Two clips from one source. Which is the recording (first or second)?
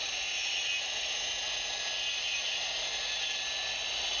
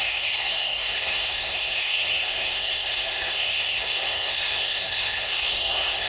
first